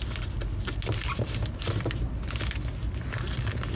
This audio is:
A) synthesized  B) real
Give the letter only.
B